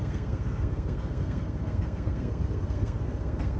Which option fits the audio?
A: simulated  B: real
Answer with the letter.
A